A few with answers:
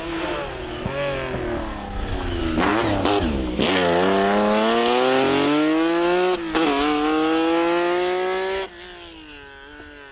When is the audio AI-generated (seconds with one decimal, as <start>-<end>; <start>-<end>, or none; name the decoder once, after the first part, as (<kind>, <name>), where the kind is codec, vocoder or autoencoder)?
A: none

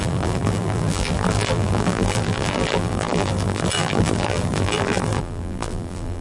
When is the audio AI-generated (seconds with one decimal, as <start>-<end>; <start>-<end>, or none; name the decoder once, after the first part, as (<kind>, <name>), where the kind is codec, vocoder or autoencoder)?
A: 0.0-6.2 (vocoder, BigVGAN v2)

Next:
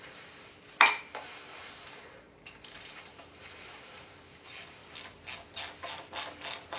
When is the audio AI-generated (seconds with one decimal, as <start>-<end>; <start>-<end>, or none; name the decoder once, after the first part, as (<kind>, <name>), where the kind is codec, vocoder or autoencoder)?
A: 0.0-4.8 (vocoder, BigVGAN v2)

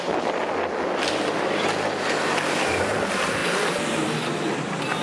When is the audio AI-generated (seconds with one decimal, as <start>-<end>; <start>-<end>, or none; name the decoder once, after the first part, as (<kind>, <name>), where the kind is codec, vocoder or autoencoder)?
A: none

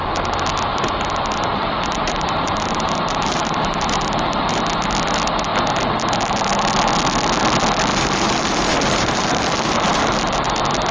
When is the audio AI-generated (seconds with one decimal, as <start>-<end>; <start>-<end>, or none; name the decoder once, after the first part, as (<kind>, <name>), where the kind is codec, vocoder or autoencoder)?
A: 0.7-4.6 (vocoder, BigVGAN v2); 7.9-10.5